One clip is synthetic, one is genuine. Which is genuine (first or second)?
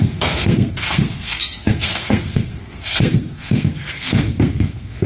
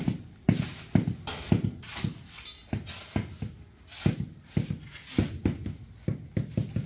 second